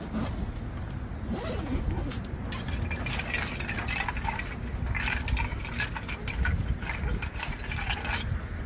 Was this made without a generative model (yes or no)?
yes